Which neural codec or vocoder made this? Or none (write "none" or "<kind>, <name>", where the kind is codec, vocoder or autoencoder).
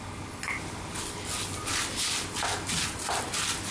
none